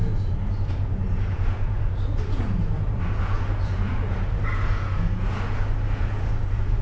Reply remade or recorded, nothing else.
remade